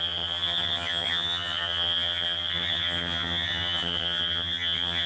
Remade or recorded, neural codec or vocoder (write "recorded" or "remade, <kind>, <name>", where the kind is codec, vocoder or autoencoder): remade, vocoder, HiFi-GAN